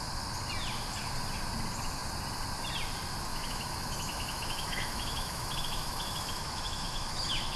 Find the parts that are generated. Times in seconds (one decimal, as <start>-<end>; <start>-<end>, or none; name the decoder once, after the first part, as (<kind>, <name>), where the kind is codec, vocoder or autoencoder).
3.3-7.6 (autoencoder, DAC-VAE)